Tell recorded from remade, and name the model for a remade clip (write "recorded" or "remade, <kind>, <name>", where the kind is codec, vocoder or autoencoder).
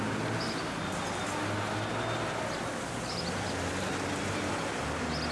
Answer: recorded